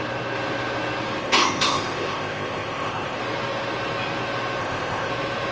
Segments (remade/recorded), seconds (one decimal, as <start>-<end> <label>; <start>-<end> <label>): 0.0-1.2 recorded; 1.2-3.2 remade; 3.2-4.6 recorded; 4.6-5.1 remade; 5.1-5.5 recorded